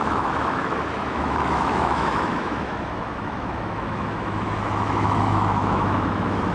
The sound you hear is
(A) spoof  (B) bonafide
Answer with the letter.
A